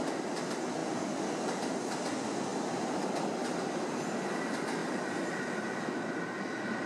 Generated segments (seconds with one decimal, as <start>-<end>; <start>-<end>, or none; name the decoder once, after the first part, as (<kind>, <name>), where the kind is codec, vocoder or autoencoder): 2.5-3.0 (vocoder, BigVGAN v2)